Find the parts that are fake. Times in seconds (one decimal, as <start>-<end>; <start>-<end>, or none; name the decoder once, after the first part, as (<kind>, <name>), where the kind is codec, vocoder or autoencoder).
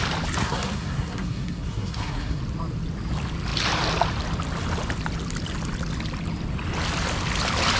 0.4-2.4 (codec, SNAC)